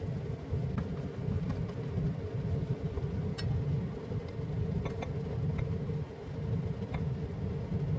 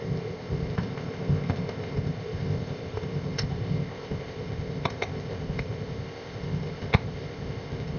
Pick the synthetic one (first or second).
second